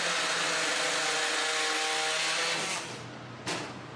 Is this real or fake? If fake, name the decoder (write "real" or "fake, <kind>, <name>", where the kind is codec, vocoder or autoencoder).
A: real